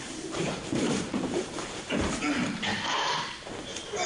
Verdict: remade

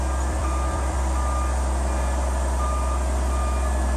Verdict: remade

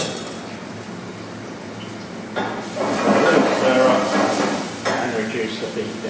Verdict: recorded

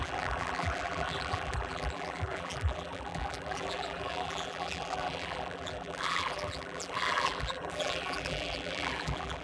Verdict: remade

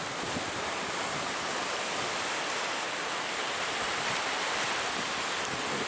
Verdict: recorded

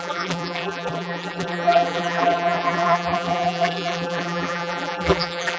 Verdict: remade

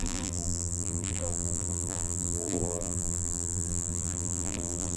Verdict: remade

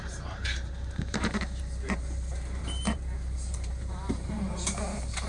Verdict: remade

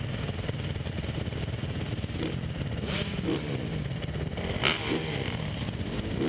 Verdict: remade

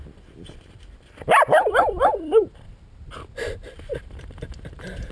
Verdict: recorded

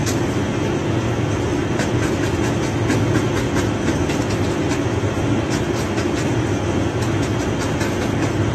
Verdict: recorded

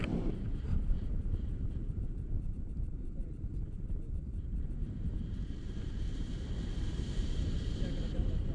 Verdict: remade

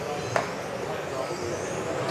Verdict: recorded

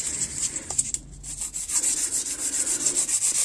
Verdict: recorded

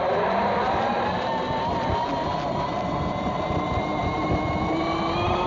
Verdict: recorded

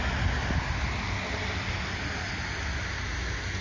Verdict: recorded